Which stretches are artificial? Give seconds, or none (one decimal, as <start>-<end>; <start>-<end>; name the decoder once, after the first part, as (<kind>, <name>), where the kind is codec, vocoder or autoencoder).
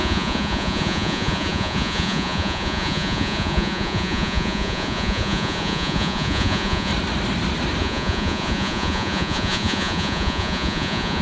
0.0-6.9 (vocoder, Vocos); 7.8-11.2